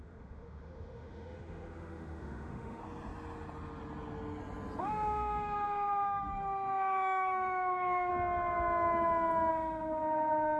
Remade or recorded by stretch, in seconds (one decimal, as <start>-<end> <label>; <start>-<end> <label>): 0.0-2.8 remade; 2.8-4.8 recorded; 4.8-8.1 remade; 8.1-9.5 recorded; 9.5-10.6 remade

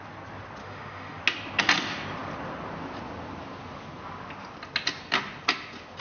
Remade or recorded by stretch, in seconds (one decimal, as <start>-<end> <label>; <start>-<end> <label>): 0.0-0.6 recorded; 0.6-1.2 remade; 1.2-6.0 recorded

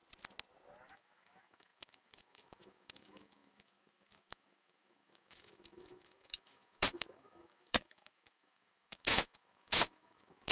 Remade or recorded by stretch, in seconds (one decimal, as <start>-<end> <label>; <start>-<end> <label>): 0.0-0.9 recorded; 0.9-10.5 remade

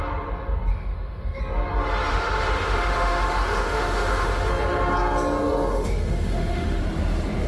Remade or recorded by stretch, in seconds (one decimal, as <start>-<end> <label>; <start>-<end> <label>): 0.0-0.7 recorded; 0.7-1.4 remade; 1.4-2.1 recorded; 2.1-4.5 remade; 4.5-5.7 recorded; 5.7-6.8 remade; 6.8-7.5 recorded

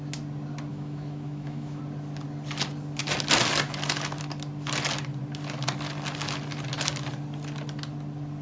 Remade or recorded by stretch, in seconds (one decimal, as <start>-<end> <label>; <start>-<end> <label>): 0.0-0.7 recorded; 0.7-1.8 remade; 1.8-8.4 recorded

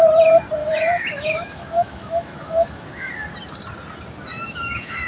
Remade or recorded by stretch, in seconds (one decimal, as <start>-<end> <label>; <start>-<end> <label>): 0.0-0.6 recorded; 0.6-3.1 remade; 3.1-4.3 recorded; 4.3-5.1 remade